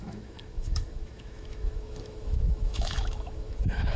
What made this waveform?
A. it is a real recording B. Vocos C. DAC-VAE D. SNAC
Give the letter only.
C